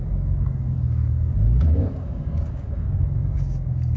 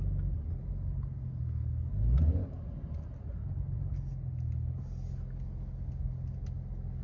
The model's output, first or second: first